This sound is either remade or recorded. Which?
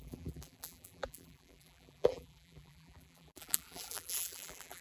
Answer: remade